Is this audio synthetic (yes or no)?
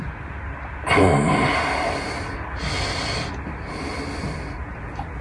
no